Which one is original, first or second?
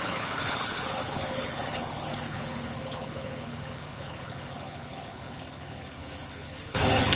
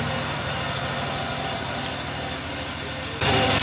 second